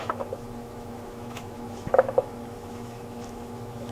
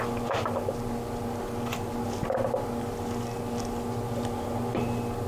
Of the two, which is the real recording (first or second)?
second